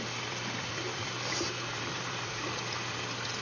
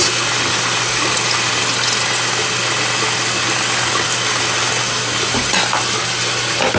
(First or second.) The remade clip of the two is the first